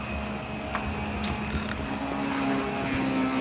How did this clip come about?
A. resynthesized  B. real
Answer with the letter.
B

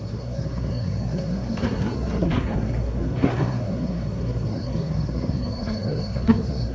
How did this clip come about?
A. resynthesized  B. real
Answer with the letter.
A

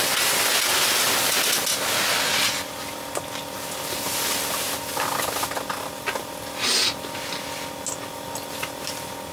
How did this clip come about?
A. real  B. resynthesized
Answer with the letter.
A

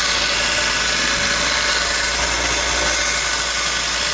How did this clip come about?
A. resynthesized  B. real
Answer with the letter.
B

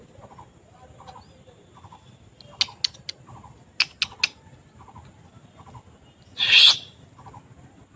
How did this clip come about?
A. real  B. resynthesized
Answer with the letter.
A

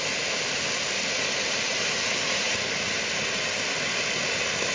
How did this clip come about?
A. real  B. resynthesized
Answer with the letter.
A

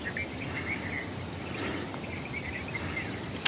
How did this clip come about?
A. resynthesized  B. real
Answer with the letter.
B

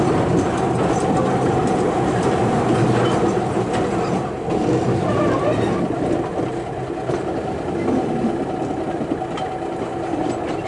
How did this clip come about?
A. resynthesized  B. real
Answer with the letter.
B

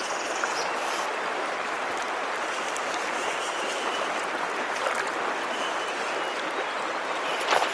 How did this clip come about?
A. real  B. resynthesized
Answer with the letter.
A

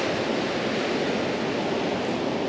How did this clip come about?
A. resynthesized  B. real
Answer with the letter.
B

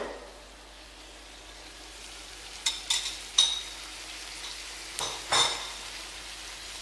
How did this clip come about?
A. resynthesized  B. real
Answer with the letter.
B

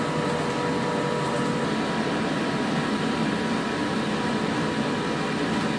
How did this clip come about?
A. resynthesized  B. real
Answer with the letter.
B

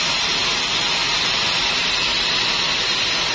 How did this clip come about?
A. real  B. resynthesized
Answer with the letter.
A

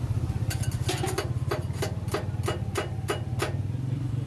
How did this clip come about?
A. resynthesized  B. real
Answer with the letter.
B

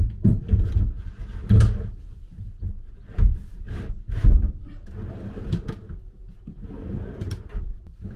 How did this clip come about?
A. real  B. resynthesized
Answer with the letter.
A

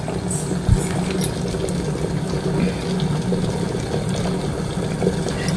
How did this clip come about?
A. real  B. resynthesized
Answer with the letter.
A